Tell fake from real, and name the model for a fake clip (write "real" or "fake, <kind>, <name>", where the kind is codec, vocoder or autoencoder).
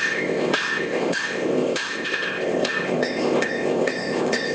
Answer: fake, codec, ZipCodec